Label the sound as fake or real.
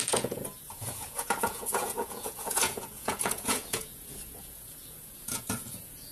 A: fake